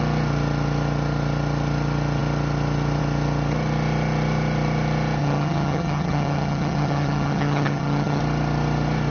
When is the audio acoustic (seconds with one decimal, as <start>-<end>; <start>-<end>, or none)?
0.0-5.2; 8.2-9.1